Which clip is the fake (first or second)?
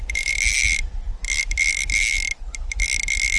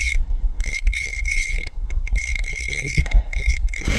second